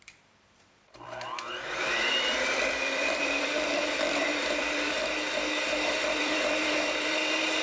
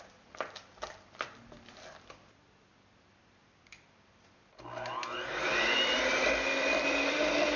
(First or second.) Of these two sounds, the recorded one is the second